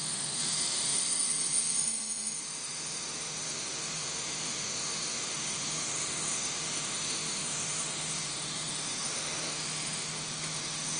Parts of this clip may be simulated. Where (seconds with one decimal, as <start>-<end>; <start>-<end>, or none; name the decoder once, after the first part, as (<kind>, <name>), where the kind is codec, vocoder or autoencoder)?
0.0-11.0 (autoencoder, DAC-VAE)